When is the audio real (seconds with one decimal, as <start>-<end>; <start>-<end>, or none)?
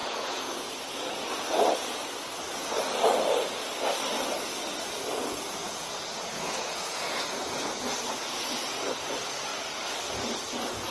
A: 0.7-5.6; 7.8-10.9